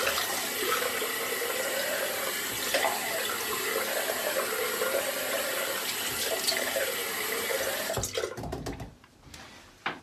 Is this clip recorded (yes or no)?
yes